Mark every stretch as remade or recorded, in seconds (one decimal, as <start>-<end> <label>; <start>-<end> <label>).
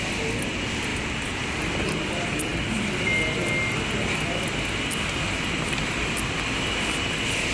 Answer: 0.0-0.9 recorded; 0.9-1.6 remade; 1.6-7.5 recorded